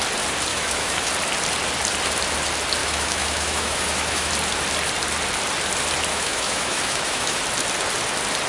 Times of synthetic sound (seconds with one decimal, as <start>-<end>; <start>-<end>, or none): 0.5-1.1; 2.8-4.3; 6.1-7.4